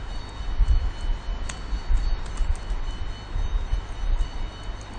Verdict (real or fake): real